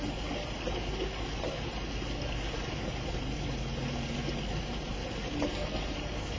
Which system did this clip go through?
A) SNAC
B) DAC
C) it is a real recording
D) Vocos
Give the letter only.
C